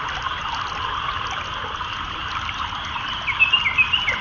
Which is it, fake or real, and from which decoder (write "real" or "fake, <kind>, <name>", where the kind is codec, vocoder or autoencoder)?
real